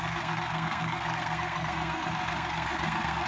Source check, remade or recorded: remade